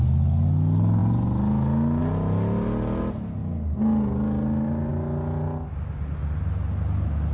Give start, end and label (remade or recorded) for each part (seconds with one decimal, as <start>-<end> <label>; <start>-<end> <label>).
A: 0.0-7.3 recorded